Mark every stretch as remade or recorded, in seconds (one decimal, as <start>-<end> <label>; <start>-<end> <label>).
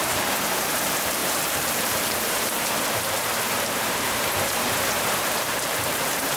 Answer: 0.0-6.4 remade